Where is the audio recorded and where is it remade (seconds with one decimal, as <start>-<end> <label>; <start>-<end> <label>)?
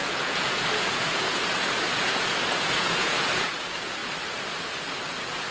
0.0-4.0 remade; 4.0-5.0 recorded; 5.0-5.5 remade